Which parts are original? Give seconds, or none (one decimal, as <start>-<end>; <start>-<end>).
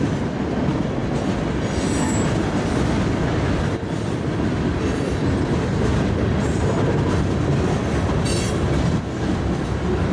0.0-10.1